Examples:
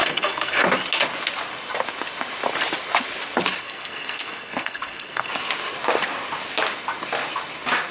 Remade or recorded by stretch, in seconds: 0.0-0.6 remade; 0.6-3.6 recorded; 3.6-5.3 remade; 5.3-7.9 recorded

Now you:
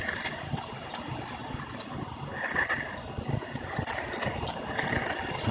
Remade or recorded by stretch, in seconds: 0.0-5.5 recorded

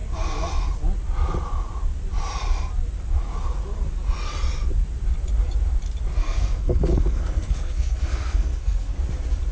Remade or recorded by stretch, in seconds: 0.0-6.2 recorded; 6.2-9.0 remade; 9.0-9.5 recorded